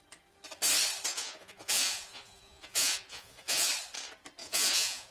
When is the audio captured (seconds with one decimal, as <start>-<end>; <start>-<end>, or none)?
0.0-1.1; 3.7-4.4